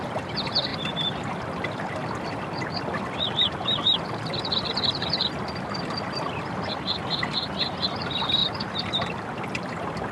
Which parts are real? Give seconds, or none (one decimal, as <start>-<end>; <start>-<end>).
8.4-9.5